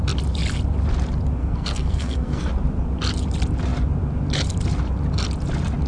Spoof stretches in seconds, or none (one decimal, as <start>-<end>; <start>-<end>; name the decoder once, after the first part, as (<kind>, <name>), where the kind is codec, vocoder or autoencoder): 1.4-2.5 (codec, SNAC)